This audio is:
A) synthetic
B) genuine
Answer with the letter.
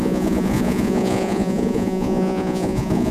A